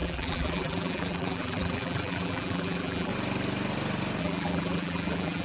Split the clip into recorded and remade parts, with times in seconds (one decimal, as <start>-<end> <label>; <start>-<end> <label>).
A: 0.0-3.1 remade; 3.1-4.2 recorded; 4.2-5.4 remade